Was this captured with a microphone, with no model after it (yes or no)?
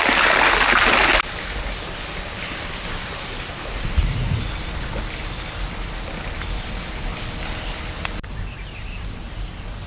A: yes